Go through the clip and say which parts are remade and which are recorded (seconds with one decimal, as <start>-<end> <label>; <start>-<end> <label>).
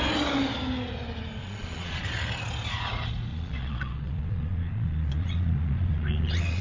0.0-1.4 recorded; 1.4-2.0 remade; 2.0-3.3 recorded; 3.3-6.6 remade